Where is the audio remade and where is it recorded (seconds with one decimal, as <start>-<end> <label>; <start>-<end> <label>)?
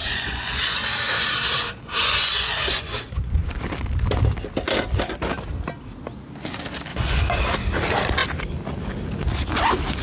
0.0-0.8 remade; 0.8-2.0 recorded; 2.0-3.6 remade; 3.6-6.9 recorded; 6.9-7.4 remade; 7.4-10.0 recorded